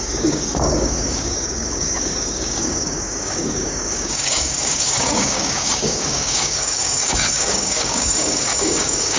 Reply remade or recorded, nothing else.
remade